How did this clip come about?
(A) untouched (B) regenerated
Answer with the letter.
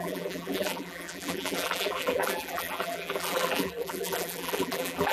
B